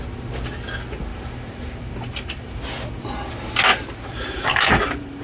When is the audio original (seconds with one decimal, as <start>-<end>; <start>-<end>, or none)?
0.0-1.1; 2.6-3.7